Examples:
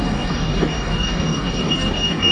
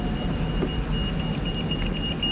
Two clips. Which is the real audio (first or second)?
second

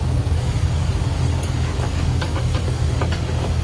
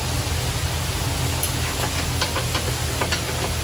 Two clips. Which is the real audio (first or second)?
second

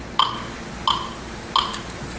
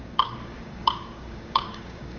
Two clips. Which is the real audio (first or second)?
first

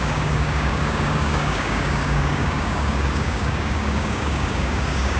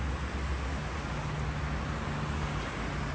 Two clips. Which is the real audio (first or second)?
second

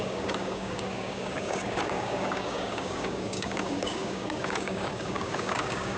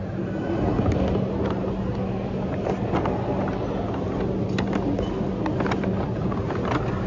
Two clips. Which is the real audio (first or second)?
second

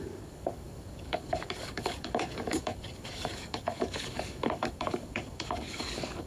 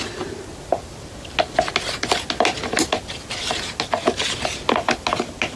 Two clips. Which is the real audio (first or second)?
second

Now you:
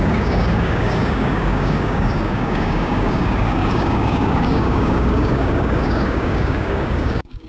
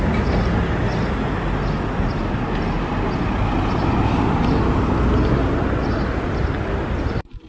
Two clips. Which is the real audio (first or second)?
second